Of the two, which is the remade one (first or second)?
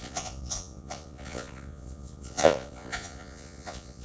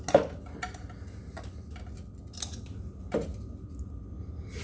first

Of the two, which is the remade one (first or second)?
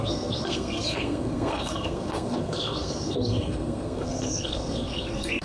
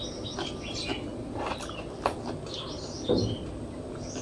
first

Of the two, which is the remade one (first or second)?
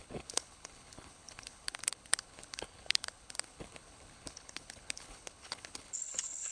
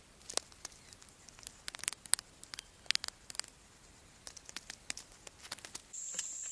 first